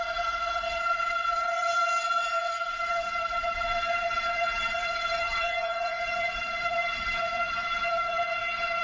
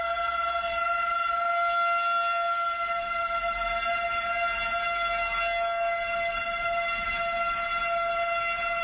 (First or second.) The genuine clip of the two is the second